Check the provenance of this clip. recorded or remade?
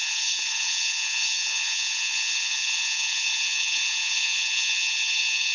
remade